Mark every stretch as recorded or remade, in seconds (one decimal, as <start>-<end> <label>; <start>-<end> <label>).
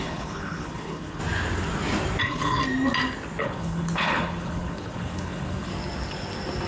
0.0-1.2 remade; 1.2-2.2 recorded; 2.2-2.6 remade; 2.6-3.4 recorded; 3.4-5.7 remade; 5.7-6.7 recorded